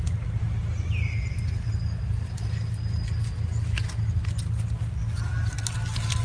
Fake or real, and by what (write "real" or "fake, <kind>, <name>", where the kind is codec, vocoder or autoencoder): real